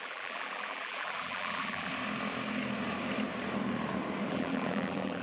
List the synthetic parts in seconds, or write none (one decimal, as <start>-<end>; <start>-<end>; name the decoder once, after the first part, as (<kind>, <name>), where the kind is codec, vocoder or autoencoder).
0.0-1.9 (vocoder, BigVGAN v2); 4.3-5.2